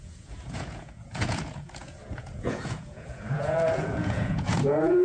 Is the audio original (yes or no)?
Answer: no